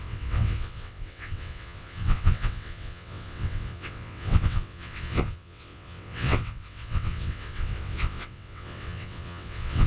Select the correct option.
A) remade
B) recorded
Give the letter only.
A